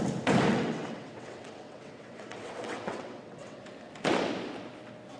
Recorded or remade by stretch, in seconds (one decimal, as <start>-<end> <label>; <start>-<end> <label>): 0.0-0.5 recorded; 0.5-3.6 remade; 3.6-5.2 recorded